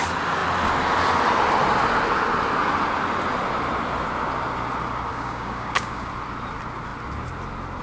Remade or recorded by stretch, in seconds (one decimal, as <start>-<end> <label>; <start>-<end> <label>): 0.0-5.1 recorded; 5.1-6.1 remade; 6.1-7.8 recorded